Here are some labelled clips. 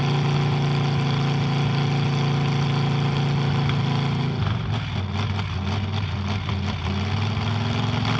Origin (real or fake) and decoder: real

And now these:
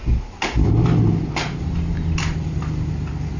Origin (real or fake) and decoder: real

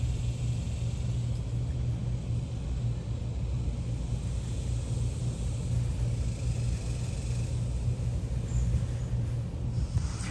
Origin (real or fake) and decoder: real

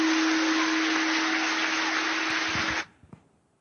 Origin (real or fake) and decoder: real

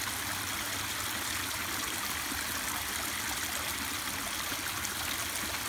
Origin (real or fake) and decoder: real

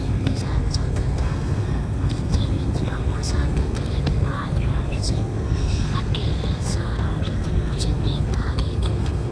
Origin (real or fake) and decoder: fake, codec, SNAC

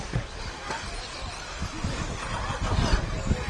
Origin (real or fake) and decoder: real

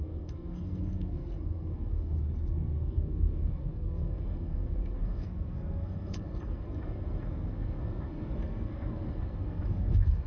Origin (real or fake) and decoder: fake, codec, SNAC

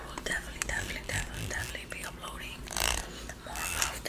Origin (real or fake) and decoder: real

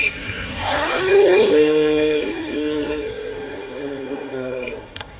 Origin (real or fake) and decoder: fake, codec, SNAC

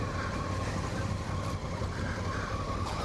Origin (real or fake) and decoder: real